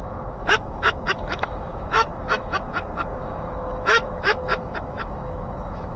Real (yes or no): no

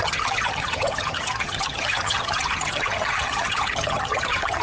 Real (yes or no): no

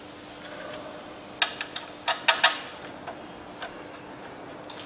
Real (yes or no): yes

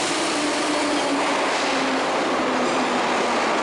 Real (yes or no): yes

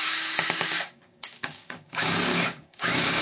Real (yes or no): no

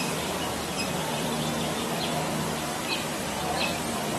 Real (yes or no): no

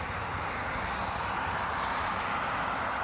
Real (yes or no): yes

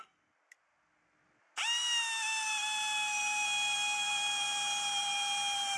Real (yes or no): yes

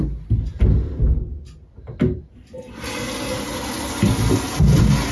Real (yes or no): yes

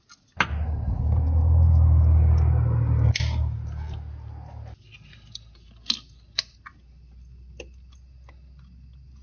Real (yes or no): yes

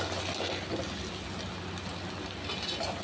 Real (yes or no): yes